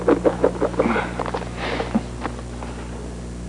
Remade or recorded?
recorded